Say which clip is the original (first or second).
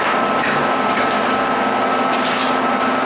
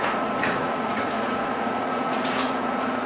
first